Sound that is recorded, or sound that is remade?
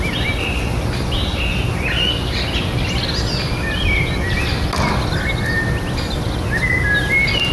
recorded